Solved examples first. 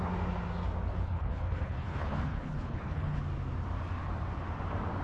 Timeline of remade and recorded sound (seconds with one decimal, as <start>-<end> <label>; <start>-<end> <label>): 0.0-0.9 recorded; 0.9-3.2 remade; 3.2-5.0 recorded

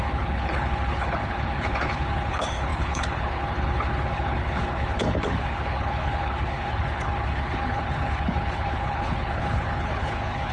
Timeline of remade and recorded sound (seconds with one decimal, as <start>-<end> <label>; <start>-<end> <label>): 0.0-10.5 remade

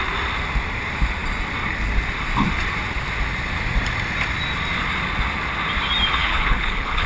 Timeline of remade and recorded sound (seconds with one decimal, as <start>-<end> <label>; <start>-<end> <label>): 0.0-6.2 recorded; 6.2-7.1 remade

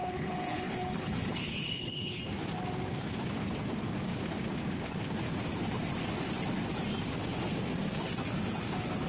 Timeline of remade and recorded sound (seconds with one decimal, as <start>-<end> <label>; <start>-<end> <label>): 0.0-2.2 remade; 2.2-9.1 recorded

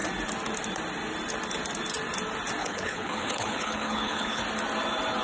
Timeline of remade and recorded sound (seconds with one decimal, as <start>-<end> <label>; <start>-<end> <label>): 0.0-2.6 recorded; 2.6-4.4 remade; 4.4-5.2 recorded

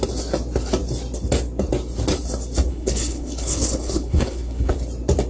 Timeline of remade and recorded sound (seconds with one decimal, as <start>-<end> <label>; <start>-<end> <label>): 0.0-2.7 recorded; 2.7-4.7 remade; 4.7-5.3 recorded

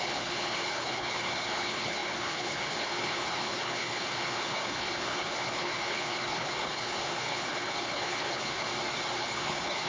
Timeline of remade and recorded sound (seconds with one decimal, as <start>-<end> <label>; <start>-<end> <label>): 0.0-8.7 remade; 8.7-9.2 recorded; 9.2-9.9 remade

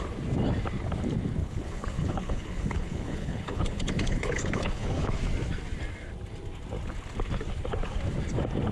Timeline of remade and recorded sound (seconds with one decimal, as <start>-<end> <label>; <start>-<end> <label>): 0.0-1.4 recorded; 1.4-5.2 remade; 5.2-8.7 recorded